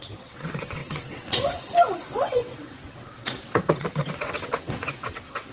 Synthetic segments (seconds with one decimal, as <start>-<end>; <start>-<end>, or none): 0.0-5.5